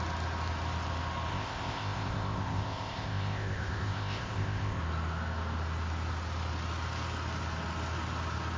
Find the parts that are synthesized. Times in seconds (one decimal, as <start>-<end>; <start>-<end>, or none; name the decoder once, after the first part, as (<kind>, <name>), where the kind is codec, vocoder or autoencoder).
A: 1.3-4.8 (codec, ZipCodec)